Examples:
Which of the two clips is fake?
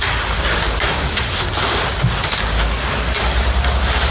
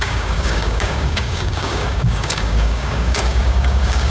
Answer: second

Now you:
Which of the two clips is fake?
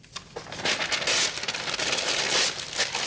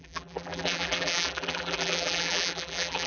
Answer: second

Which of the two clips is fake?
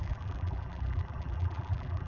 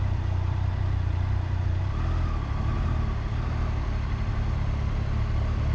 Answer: first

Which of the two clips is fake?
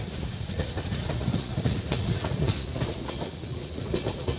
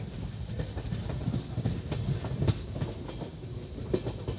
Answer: first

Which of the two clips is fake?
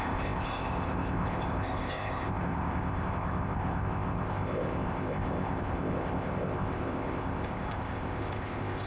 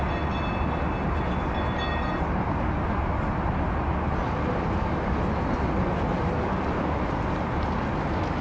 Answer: first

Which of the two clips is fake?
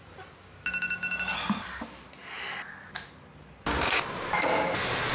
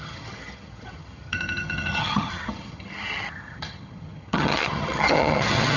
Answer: second